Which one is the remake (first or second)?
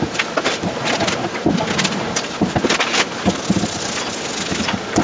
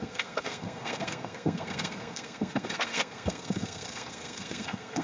second